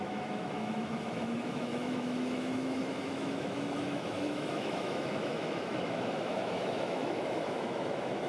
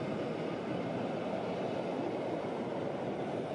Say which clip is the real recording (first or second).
second